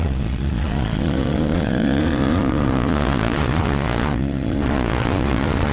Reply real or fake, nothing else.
fake